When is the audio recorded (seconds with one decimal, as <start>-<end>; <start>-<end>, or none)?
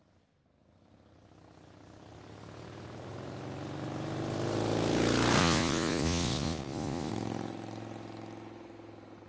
0.0-5.4; 7.1-9.3